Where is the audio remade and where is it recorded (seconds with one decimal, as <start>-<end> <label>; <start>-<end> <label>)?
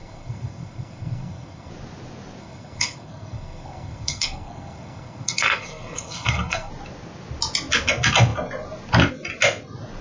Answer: 0.0-1.7 remade; 1.7-2.4 recorded; 2.4-6.7 remade; 6.7-10.0 recorded